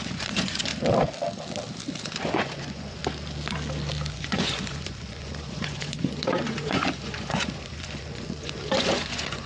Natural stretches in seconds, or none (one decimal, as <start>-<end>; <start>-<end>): 0.7-2.0; 3.0-4.1